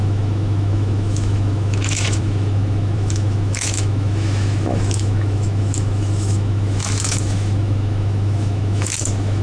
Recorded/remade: remade